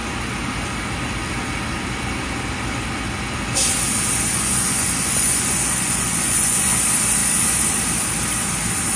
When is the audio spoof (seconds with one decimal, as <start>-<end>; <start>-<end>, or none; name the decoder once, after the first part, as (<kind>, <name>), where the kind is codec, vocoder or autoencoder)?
4.3-6.8 (vocoder, Vocos)